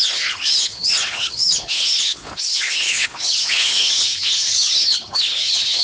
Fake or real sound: fake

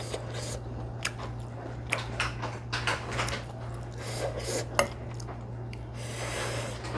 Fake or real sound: real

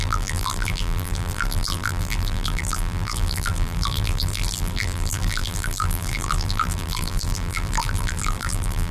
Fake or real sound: fake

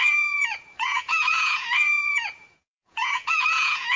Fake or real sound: fake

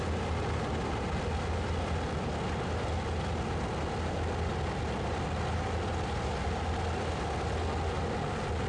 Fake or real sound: real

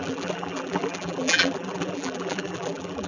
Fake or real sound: fake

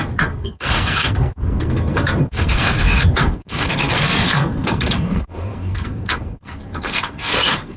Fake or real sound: fake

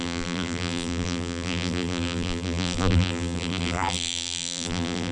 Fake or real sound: fake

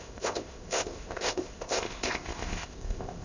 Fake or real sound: fake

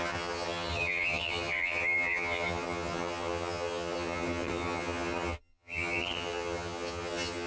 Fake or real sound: fake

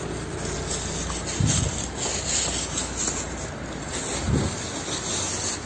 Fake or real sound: real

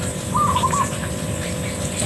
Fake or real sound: real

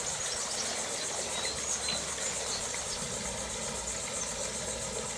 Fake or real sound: real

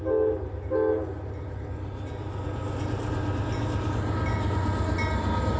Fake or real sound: real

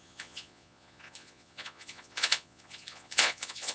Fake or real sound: fake